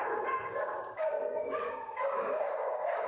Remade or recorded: remade